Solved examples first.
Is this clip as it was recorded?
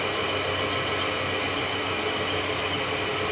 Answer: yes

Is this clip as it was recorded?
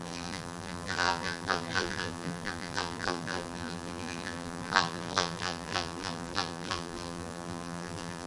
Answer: no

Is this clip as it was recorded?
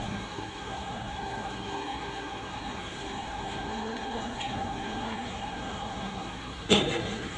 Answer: no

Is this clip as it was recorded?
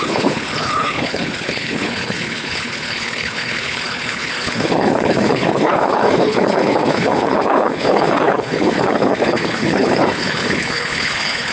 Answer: no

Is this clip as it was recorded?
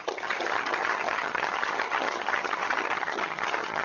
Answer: no